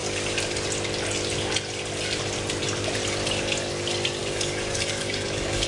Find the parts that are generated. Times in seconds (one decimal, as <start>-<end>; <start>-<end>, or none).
4.2-5.7